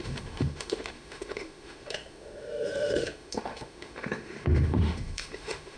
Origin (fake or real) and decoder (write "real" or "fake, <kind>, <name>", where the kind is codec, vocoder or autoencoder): fake, autoencoder, DAC-VAE